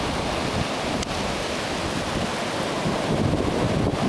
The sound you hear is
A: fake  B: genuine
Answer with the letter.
B